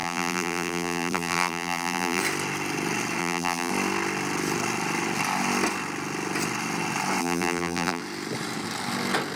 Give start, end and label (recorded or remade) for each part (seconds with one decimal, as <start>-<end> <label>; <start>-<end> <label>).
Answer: 0.0-2.2 remade; 2.2-3.2 recorded; 3.2-3.7 remade; 3.7-7.2 recorded; 7.2-8.0 remade; 8.0-9.4 recorded